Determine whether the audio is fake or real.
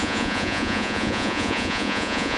fake